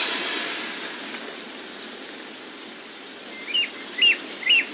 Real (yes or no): yes